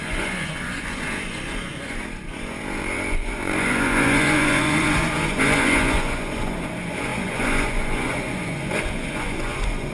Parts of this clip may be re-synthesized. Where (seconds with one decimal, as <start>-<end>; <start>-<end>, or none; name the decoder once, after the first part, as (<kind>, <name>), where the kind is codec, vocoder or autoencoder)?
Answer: 0.0-9.9 (vocoder, Vocos)